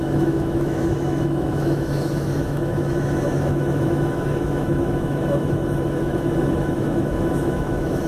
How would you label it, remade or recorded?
remade